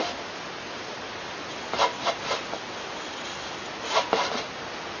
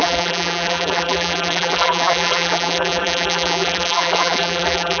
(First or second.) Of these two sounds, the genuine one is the first